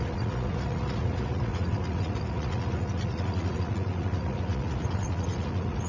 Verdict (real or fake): fake